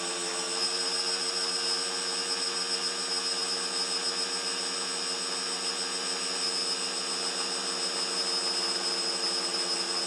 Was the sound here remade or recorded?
recorded